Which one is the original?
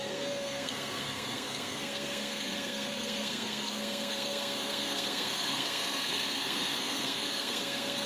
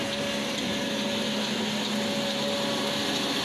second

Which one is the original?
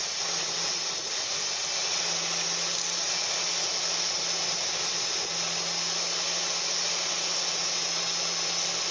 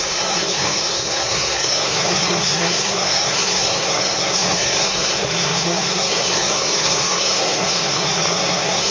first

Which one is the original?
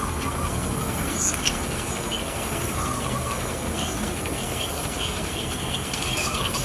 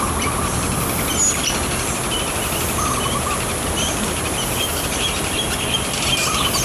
second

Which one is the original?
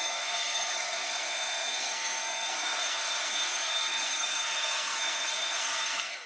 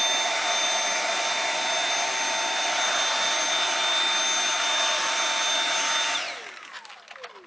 second